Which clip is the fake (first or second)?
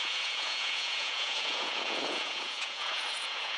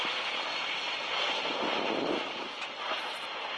first